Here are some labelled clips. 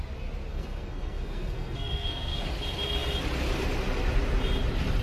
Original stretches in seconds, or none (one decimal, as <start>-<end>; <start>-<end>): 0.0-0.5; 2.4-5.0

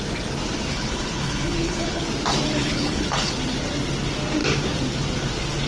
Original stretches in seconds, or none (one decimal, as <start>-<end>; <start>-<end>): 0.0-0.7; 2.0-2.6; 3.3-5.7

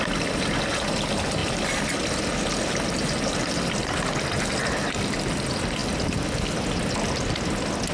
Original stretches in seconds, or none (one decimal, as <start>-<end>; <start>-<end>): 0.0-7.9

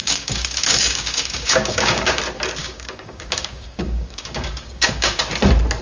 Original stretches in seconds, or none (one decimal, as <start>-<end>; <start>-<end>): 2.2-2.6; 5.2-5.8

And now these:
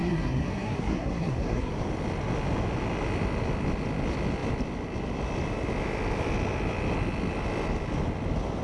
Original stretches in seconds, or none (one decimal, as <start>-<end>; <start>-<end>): 1.7-8.6

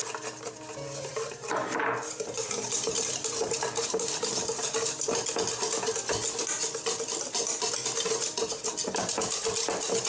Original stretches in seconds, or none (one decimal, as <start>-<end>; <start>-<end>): 0.0-1.1; 5.2-10.1

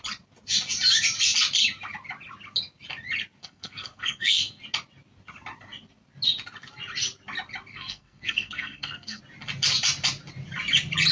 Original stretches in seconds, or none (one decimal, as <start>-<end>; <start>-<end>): 0.0-3.4; 4.6-7.7; 9.2-11.1